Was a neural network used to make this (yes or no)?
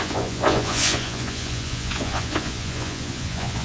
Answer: yes